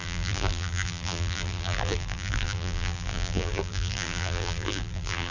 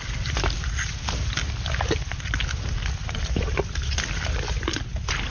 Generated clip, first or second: first